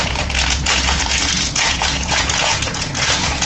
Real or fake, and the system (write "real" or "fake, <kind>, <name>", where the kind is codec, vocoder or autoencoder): fake, vocoder, Vocos